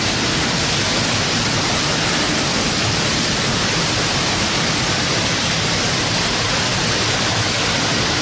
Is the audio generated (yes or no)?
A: no